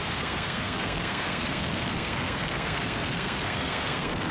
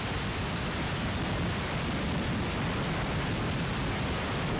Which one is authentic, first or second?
second